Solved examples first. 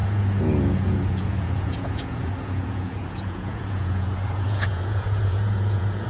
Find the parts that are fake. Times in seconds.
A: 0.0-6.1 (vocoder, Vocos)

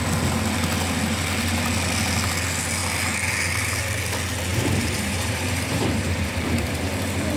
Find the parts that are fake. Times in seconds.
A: 4.5-7.4 (vocoder, BigVGAN v2)

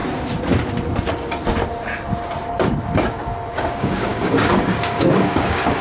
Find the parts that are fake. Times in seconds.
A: 3.5-5.8 (codec, DAC)

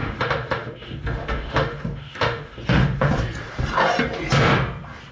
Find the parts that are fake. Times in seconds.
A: 0.0-3.1 (autoencoder, DAC-VAE)

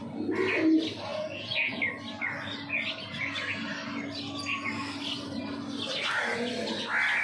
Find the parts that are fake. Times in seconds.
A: 1.1-1.8 (vocoder, Vocos)

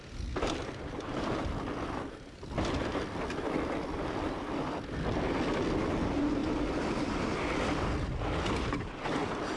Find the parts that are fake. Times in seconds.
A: none

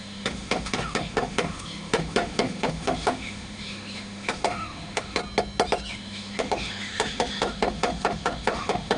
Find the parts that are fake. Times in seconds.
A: 0.0-5.2 (autoencoder, DAC-VAE); 5.9-9.0

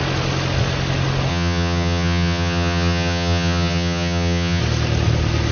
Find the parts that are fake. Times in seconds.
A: 1.3-4.6 (vocoder, HiFi-GAN)